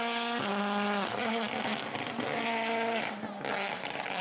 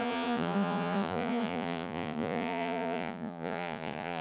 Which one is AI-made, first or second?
second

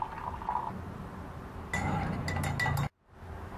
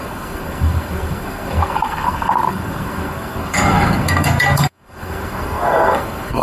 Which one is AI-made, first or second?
second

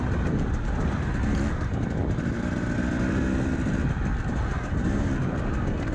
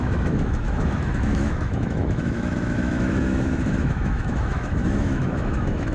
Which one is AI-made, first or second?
second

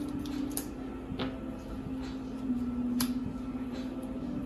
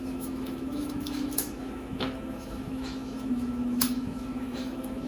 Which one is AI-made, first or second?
second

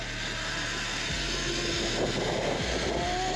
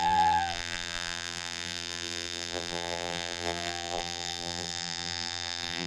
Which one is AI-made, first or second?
second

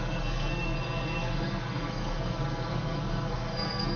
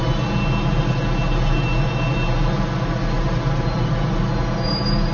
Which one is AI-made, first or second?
first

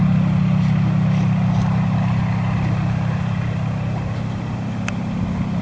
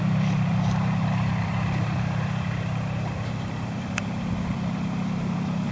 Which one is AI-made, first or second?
second